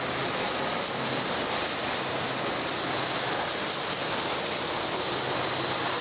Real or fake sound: real